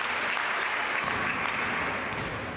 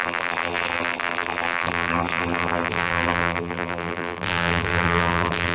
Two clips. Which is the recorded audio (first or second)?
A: first